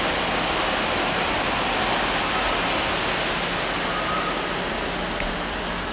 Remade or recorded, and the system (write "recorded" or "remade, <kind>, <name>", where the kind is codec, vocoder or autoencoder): recorded